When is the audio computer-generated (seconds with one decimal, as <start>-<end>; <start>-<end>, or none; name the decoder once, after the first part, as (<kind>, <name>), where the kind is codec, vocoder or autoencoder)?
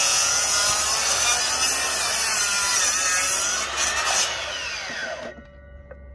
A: 0.0-0.6 (vocoder, Vocos)